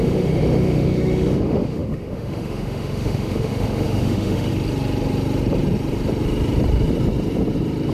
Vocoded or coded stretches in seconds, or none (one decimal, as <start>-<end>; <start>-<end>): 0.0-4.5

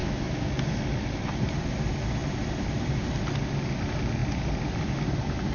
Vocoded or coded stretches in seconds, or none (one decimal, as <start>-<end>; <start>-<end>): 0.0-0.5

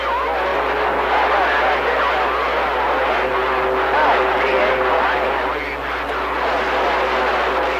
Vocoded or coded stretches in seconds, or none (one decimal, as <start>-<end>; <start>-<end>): none